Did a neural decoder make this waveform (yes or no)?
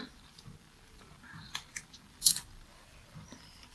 yes